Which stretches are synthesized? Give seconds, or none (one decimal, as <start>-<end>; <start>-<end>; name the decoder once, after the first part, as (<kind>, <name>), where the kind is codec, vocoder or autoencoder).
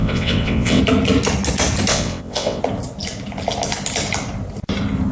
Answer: 0.0-0.8 (vocoder, WaveNeXt); 1.9-2.6